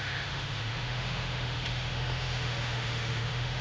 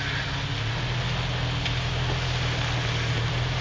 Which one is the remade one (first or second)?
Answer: first